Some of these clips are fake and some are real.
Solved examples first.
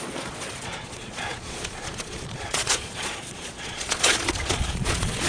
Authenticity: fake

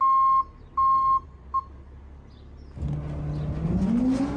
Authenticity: real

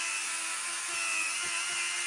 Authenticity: real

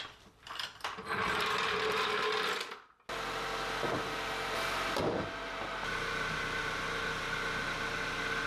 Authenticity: real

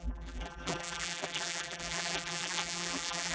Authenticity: fake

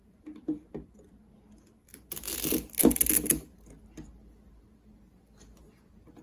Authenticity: real